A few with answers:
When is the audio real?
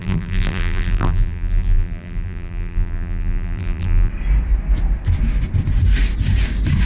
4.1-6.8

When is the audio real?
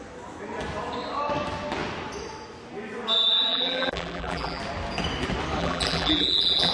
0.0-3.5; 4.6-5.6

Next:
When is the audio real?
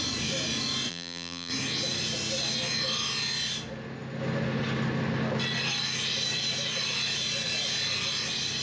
0.0-0.9; 1.5-8.6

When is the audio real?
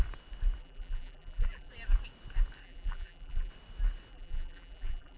0.0-0.6; 1.7-2.6; 3.5-4.1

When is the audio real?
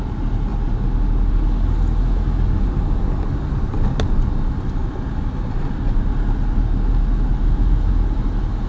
0.0-7.3; 7.9-8.7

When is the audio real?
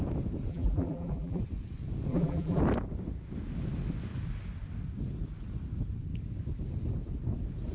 0.0-0.5; 1.4-2.1; 2.6-7.7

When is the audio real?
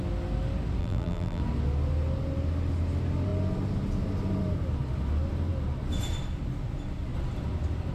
0.0-0.8; 1.4-7.9